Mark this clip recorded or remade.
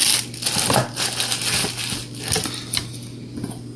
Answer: recorded